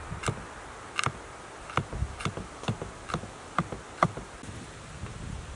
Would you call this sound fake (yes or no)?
no